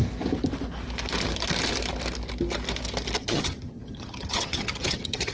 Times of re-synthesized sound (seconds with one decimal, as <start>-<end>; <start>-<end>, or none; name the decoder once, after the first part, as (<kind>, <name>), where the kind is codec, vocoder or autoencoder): 3.2-5.3 (vocoder, HiFi-GAN)